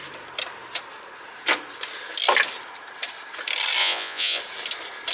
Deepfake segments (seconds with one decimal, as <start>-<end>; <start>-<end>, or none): 3.8-4.4